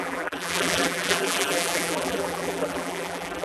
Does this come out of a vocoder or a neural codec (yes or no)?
yes